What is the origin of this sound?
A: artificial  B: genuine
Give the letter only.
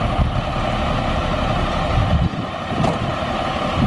B